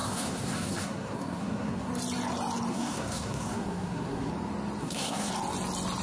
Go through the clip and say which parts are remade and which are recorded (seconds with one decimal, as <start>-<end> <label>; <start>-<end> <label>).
0.0-1.9 remade; 1.9-2.7 recorded; 2.7-4.3 remade; 4.3-4.8 recorded; 4.8-5.3 remade; 5.3-6.0 recorded